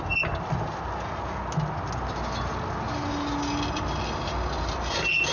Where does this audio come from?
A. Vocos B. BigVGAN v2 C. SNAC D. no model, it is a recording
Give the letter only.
D